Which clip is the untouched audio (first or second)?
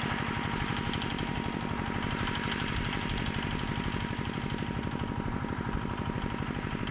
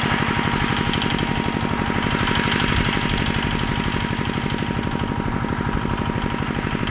second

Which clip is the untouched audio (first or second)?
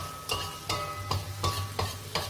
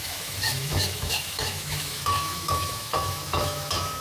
first